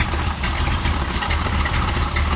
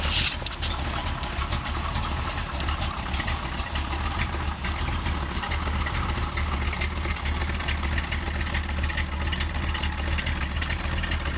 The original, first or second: second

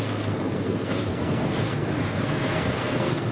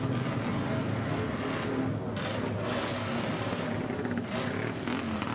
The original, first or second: second